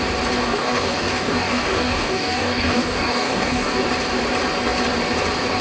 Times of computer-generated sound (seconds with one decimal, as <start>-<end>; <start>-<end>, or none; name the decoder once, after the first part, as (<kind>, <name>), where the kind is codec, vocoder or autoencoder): 0.4-3.8 (codec, DAC)